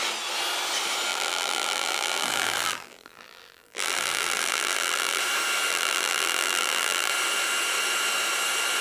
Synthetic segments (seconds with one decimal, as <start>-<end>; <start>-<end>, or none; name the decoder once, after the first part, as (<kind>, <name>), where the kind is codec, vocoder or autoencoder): 1.1-5.2 (vocoder, BigVGAN v2); 5.7-7.1